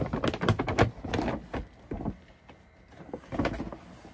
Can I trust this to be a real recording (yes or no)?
yes